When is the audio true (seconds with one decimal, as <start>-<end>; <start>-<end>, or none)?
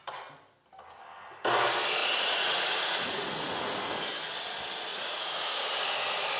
0.0-2.0; 3.6-4.9; 5.7-6.4